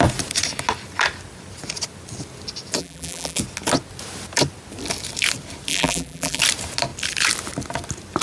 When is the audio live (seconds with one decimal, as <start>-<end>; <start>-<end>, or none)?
0.0-2.8; 3.4-5.7; 6.4-8.2